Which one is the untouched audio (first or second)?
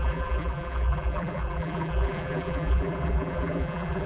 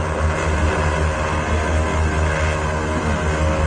second